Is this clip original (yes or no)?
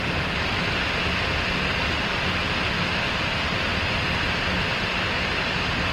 yes